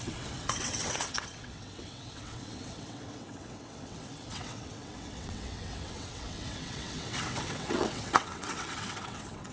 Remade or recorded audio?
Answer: remade